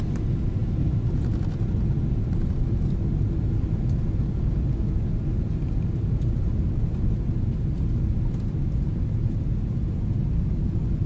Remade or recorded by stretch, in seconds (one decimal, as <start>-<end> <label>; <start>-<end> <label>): 0.0-11.1 recorded